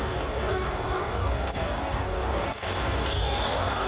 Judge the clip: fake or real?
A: fake